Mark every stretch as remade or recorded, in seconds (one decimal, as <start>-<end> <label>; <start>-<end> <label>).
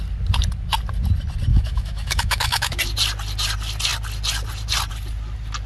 0.0-1.5 recorded; 1.5-2.8 remade; 2.8-5.7 recorded